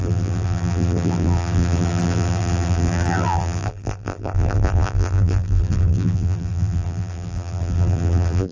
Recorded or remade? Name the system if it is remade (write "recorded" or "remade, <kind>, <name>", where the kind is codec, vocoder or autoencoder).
remade, vocoder, BigVGAN v2